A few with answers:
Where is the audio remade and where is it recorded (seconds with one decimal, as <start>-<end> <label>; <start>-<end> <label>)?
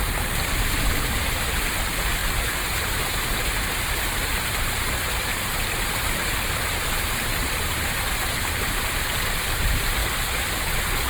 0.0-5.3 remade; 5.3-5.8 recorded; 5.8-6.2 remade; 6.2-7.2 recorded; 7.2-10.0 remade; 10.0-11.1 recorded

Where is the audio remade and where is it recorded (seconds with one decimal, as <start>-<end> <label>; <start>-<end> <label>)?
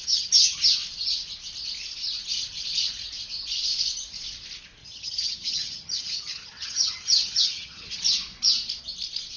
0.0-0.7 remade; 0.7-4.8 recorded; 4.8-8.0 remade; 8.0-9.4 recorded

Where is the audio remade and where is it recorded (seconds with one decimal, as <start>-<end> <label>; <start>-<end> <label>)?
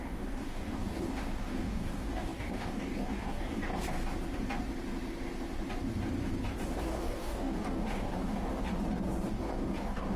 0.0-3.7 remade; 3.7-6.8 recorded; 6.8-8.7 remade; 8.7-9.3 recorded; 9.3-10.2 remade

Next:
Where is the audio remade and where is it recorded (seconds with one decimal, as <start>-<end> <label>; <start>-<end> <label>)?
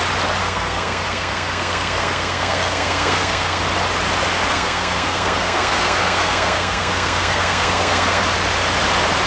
0.0-0.4 recorded; 0.4-3.6 remade; 3.6-4.5 recorded; 4.5-8.2 remade; 8.2-9.3 recorded